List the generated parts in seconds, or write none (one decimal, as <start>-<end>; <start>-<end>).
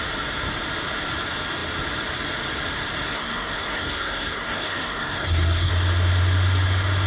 3.0-5.7